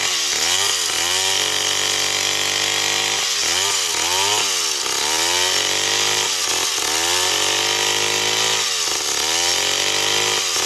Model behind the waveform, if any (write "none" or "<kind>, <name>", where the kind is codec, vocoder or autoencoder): none